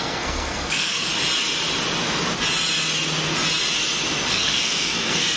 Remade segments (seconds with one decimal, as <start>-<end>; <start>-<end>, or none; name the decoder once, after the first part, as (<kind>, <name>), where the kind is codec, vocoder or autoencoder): 0.0-1.1 (codec, SNAC); 4.3-5.4